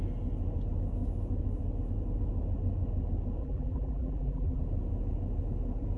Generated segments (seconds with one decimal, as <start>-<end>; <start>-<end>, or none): 3.4-4.6